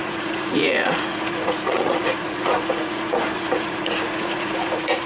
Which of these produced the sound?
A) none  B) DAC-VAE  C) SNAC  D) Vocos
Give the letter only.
D